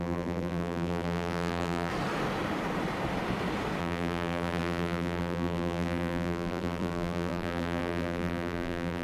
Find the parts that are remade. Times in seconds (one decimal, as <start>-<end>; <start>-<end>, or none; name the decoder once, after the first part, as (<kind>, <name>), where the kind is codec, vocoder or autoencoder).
0.0-1.9 (vocoder, BigVGAN v2); 3.8-9.0